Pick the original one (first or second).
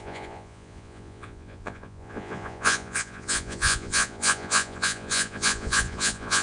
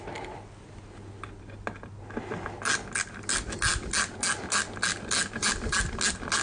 second